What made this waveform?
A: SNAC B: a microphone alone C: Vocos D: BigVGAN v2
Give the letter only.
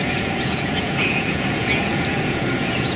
C